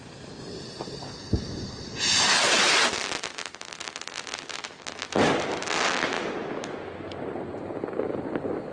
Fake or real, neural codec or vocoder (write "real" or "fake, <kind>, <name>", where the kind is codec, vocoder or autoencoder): real